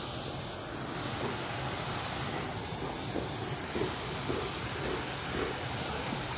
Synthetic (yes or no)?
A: no